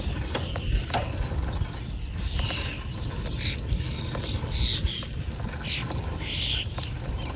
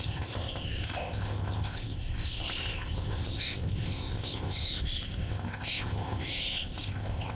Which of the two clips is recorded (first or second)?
first